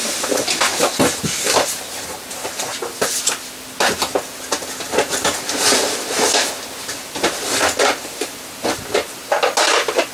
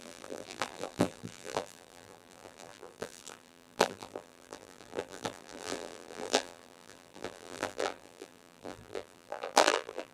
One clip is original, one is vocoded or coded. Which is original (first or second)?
first